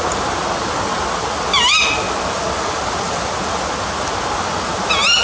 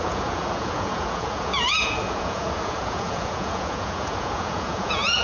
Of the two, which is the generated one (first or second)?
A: second